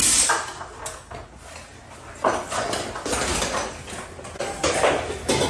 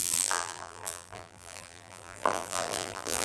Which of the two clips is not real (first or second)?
second